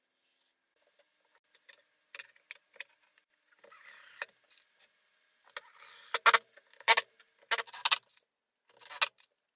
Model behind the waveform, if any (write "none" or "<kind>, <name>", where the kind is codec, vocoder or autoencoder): none